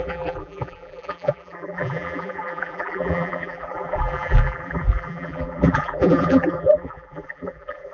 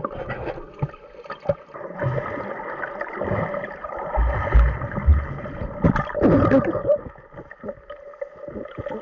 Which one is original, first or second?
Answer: second